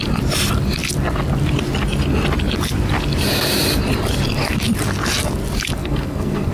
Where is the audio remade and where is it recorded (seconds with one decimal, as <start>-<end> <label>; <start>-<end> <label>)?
0.0-5.8 recorded; 5.8-6.5 remade